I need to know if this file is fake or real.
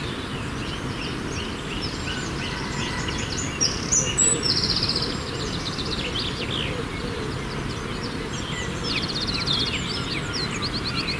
real